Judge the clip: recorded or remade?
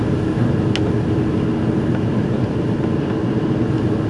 recorded